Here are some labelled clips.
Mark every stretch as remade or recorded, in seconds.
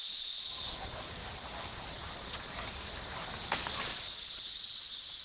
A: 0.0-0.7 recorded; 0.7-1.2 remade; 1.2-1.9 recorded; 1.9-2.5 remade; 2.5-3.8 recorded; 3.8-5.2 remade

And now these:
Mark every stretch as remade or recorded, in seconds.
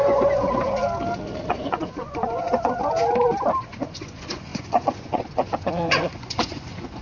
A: 0.0-0.8 remade; 0.8-1.5 recorded; 1.5-2.8 remade; 2.8-3.6 recorded; 3.6-7.0 remade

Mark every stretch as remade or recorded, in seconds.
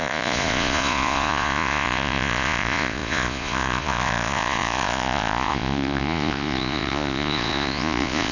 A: 0.0-8.3 remade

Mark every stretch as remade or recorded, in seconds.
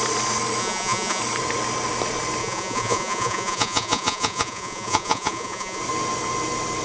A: 0.0-0.6 recorded; 0.6-1.2 remade; 1.2-2.4 recorded; 2.4-5.8 remade; 5.8-6.8 recorded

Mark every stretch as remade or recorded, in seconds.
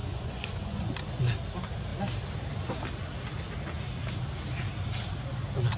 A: 0.0-0.9 remade; 0.9-5.8 recorded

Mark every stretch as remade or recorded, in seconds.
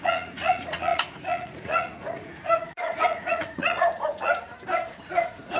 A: 0.0-4.3 remade; 4.3-5.0 recorded; 5.0-5.6 remade